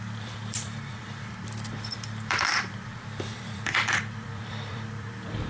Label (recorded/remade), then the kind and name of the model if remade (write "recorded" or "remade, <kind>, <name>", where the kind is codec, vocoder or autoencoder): remade, vocoder, BigVGAN v2